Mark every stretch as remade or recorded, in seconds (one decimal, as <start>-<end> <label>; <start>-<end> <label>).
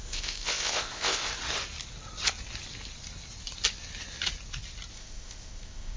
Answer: 0.0-1.3 remade; 1.3-4.9 recorded; 4.9-6.0 remade